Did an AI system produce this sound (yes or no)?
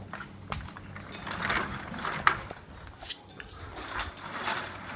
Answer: no